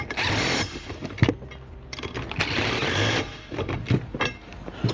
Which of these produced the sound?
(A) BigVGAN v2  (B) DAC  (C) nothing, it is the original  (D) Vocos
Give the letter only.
A